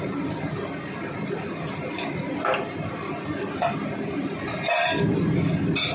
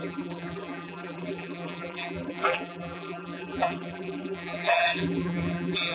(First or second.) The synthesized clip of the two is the second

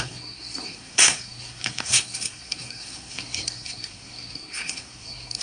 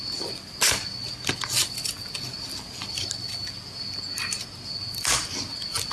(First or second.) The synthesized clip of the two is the first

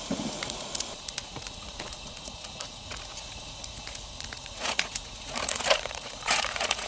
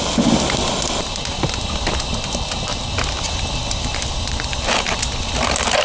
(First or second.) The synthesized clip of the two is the first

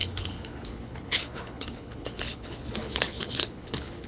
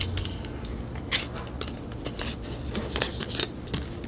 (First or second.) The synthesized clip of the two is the first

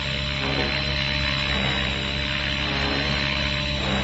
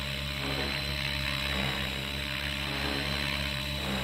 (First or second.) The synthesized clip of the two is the second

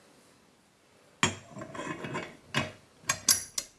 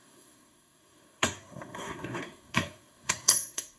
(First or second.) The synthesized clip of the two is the second